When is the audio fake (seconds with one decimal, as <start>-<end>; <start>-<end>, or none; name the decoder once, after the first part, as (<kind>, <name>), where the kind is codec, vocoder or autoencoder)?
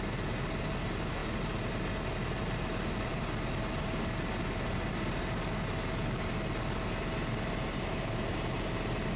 none